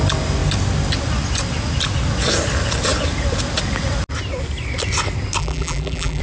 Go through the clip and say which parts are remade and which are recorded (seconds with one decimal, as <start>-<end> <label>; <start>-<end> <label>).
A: 0.0-5.4 recorded; 5.4-6.2 remade